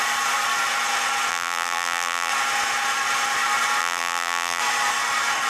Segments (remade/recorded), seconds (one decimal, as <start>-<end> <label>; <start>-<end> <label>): 0.0-1.3 recorded; 1.3-2.3 remade; 2.3-3.8 recorded; 3.8-4.6 remade; 4.6-5.5 recorded